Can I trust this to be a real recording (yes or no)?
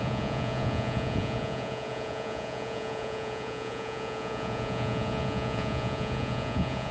no